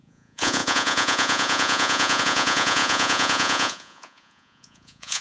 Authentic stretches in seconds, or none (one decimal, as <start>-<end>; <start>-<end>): none